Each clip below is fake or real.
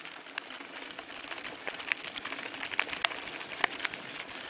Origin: real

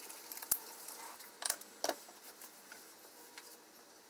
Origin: real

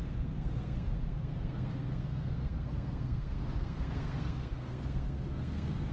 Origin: fake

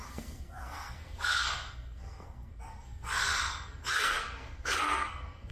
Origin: fake